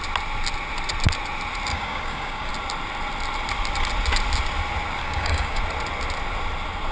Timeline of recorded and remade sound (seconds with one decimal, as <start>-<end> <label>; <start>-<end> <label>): 0.0-1.7 recorded; 1.7-2.5 remade; 2.5-5.0 recorded; 5.0-5.6 remade; 5.6-6.9 recorded